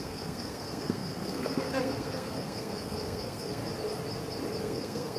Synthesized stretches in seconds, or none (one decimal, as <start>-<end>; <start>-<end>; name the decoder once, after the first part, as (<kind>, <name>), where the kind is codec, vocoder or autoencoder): 0.0-3.6 (codec, SNAC); 4.6-5.2